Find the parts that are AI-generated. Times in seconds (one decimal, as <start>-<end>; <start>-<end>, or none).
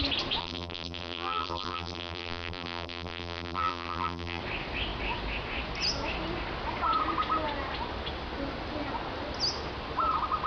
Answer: 0.4-4.4